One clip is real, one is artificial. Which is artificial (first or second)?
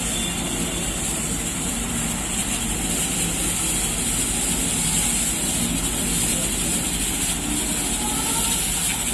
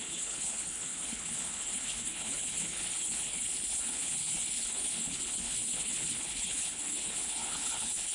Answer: second